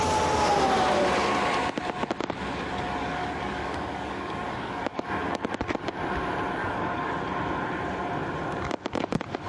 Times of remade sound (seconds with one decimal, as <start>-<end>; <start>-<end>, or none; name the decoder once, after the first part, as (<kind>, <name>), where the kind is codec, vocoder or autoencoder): 3.0-5.5 (codec, DAC); 6.6-7.1